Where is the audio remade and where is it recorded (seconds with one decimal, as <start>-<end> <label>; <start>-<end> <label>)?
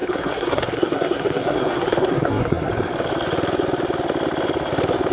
0.0-2.7 remade; 2.7-5.1 recorded